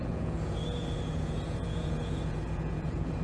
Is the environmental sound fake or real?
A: fake